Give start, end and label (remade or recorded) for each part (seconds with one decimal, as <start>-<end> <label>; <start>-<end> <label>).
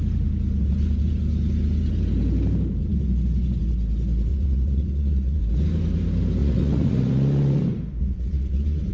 0.0-4.3 recorded; 4.3-5.4 remade; 5.4-6.4 recorded; 6.4-7.6 remade; 7.6-8.0 recorded; 8.0-8.9 remade